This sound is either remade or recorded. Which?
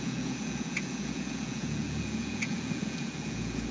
remade